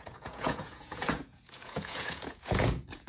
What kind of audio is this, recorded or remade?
remade